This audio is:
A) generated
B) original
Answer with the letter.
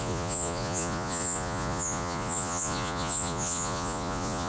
A